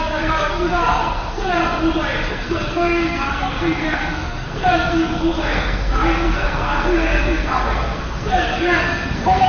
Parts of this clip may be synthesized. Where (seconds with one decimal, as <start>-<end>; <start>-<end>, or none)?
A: 0.0-1.6; 2.3-9.5